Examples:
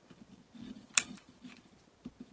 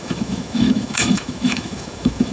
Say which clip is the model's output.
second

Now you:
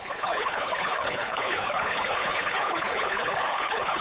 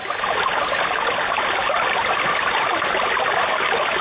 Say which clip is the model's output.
first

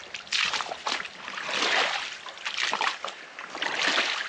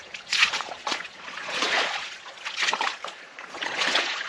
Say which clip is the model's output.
second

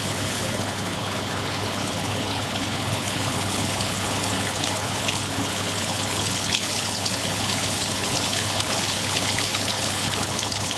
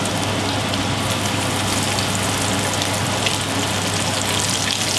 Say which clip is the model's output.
first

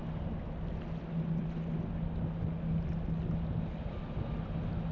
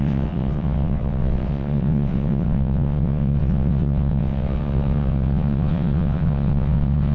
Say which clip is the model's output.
second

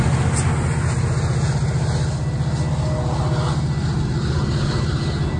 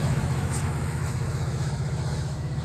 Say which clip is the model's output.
second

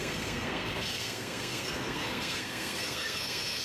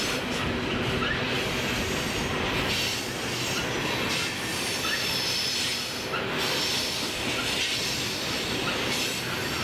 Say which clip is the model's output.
first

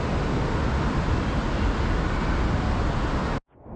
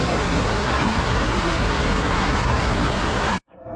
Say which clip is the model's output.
second